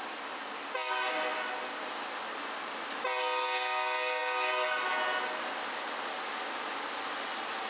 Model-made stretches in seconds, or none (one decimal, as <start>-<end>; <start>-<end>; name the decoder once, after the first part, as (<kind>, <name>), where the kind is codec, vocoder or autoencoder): none